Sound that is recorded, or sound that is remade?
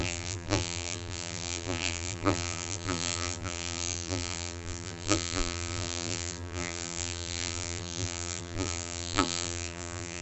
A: remade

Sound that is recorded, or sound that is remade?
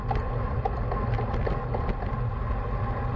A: recorded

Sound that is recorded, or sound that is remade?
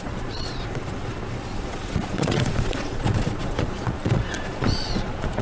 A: remade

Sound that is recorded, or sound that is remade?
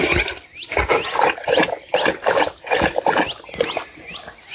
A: recorded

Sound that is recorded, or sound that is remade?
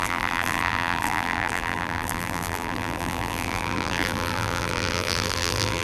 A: remade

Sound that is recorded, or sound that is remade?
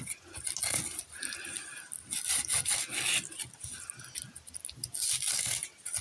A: recorded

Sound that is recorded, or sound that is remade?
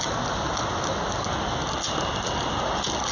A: recorded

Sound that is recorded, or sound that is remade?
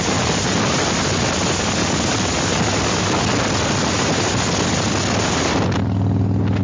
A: recorded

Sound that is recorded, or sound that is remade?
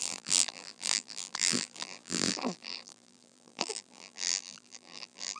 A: remade